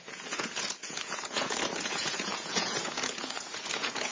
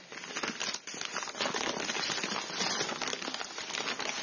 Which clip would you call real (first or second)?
second